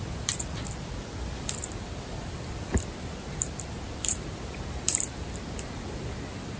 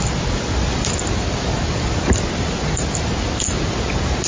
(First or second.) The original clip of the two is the second